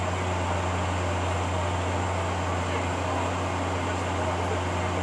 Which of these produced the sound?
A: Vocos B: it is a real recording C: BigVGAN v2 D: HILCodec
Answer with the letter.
B